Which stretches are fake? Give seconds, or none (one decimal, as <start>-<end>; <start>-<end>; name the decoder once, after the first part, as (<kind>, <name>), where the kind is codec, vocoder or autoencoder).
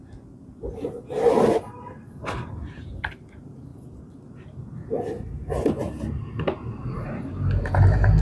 0.0-3.7 (vocoder, BigVGAN v2); 5.8-8.2